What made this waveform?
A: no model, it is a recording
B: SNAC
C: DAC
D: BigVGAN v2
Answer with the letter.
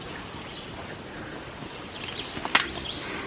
A